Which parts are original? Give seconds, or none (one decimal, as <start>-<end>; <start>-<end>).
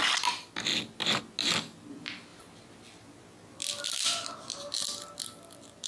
0.0-5.9